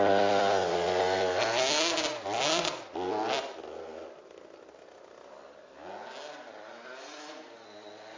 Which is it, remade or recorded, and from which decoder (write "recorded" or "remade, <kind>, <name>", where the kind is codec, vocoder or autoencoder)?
recorded